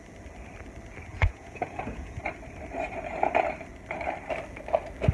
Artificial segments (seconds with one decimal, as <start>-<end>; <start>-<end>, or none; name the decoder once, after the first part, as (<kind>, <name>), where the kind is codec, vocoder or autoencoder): 1.1-2.2 (vocoder, Vocos)